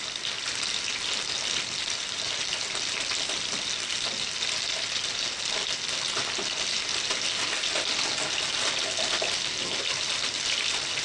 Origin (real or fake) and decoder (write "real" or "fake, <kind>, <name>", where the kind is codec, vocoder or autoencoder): real